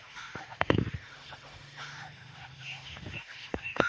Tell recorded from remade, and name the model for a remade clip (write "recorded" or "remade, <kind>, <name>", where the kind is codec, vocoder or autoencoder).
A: remade, autoencoder, DAC-VAE